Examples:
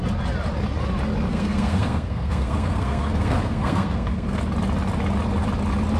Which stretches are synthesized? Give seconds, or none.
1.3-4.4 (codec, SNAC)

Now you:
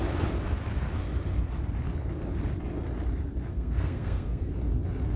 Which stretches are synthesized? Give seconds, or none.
3.5-4.5 (codec, SNAC)

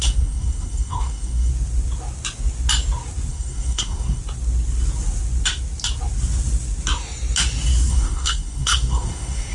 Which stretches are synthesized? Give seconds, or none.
0.0-1.5 (codec, SNAC); 3.3-4.2; 7.9-9.5

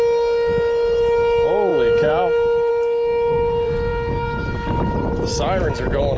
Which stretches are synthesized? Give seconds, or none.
none

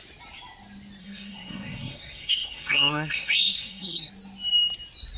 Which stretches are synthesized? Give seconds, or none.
1.0-4.1 (codec, SNAC)

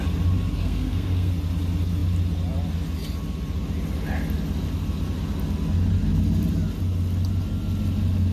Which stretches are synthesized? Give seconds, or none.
0.6-1.3 (codec, SNAC)